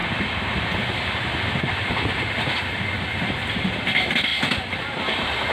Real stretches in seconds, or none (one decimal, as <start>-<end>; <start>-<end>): 0.0-5.5